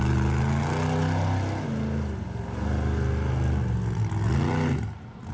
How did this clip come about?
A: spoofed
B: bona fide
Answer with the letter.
B